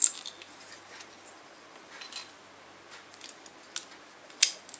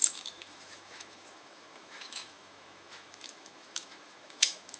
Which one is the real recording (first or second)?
first